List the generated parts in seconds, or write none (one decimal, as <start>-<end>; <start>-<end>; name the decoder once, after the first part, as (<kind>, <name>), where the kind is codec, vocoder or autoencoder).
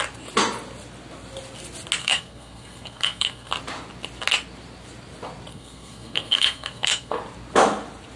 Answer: 2.0-3.5 (codec, SNAC); 5.5-7.2